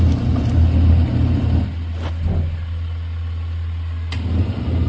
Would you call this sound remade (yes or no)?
no